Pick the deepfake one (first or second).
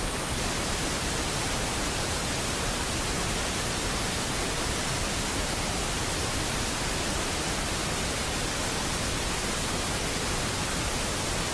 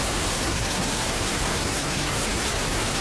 second